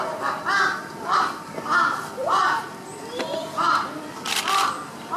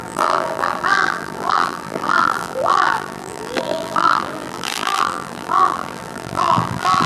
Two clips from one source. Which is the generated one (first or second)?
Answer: second